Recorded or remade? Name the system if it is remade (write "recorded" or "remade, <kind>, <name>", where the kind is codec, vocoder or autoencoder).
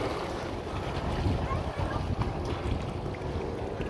recorded